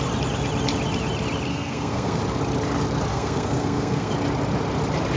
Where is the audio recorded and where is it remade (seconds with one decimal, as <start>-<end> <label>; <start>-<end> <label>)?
0.0-1.5 recorded; 1.5-2.2 remade; 2.2-3.1 recorded; 3.1-4.1 remade; 4.1-5.2 recorded